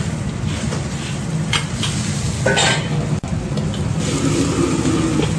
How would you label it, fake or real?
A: real